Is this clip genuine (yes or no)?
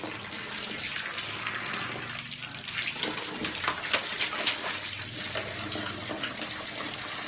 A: yes